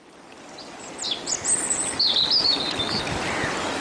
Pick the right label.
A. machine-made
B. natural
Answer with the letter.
B